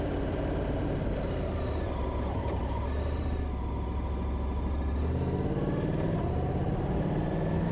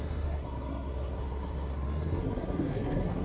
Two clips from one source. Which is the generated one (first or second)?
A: second